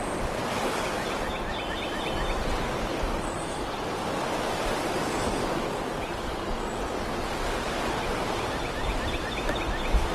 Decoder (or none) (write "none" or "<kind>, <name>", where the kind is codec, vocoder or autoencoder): none